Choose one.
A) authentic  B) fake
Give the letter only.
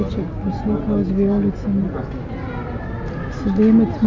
A